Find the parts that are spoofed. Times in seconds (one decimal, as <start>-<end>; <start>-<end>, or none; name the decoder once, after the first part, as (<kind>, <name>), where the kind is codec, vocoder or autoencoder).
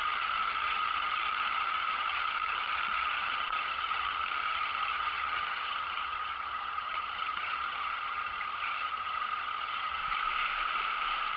0.0-10.0 (vocoder, HiFi-GAN)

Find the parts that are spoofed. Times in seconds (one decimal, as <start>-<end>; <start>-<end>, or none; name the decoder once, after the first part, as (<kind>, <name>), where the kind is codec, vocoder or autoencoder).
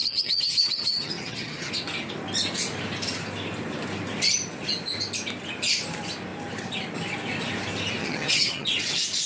0.0-1.7 (vocoder, HiFi-GAN); 8.0-8.7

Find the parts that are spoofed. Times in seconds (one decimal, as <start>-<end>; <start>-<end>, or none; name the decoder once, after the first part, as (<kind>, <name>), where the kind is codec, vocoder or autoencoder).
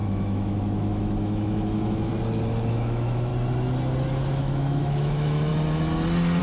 0.0-2.1 (autoencoder, DAC-VAE); 2.7-3.3; 4.3-5.5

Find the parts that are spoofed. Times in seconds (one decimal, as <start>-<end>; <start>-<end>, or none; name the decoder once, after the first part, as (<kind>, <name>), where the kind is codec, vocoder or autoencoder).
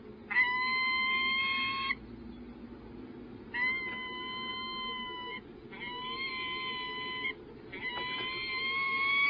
none